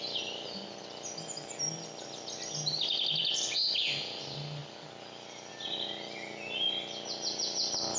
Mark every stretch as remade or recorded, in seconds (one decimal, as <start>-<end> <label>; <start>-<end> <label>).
0.0-8.0 recorded